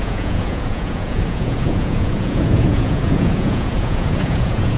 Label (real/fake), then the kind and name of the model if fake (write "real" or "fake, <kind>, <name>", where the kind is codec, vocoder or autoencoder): fake, vocoder, Vocos